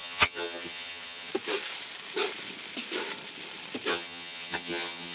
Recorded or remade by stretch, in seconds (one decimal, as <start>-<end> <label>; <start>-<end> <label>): 0.0-1.3 remade; 1.3-3.9 recorded; 3.9-5.1 remade